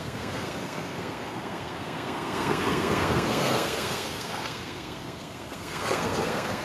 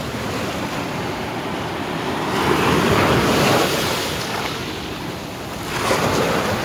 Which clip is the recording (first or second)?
second